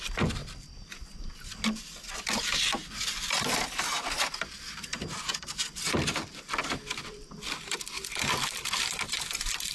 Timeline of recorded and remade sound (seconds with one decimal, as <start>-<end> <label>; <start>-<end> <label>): 0.0-0.4 remade; 0.4-2.9 recorded; 2.9-9.7 remade